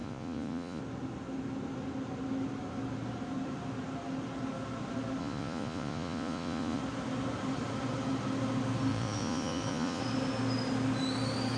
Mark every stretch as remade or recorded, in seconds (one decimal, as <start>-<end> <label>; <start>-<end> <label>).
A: 0.0-0.8 remade; 0.8-5.2 recorded; 5.2-6.8 remade; 6.8-8.9 recorded; 8.9-10.0 remade; 10.0-11.6 recorded